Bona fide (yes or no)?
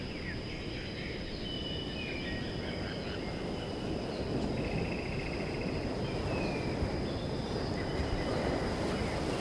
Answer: yes